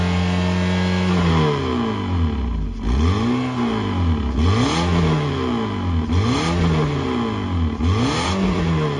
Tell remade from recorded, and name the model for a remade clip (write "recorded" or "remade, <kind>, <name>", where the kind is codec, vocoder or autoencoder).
recorded